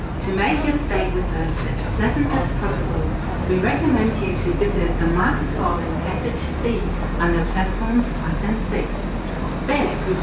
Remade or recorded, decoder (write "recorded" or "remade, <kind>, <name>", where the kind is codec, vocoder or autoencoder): recorded